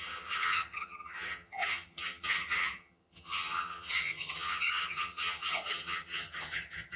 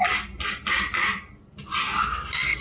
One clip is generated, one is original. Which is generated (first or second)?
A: first